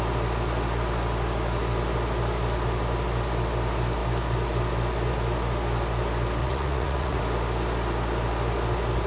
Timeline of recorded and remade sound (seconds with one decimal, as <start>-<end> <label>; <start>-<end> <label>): 0.0-6.4 recorded; 6.4-7.2 remade; 7.2-9.1 recorded